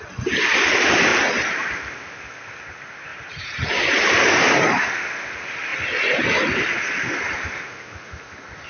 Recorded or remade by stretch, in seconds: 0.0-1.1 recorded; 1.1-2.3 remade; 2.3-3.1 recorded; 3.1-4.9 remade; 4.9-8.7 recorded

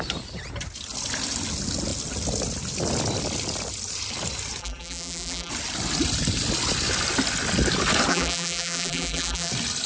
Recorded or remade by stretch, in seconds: 0.0-4.6 recorded; 4.6-5.5 remade; 5.5-8.1 recorded; 8.1-9.5 remade; 9.5-9.9 recorded

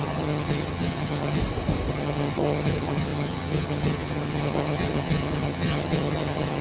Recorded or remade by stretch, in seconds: 0.0-1.4 remade; 1.4-1.9 recorded; 1.9-6.6 remade